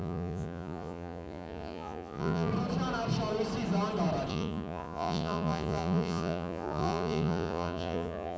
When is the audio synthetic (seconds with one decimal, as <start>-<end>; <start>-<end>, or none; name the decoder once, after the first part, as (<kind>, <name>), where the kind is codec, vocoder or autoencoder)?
0.0-2.5 (vocoder, Vocos); 4.3-8.4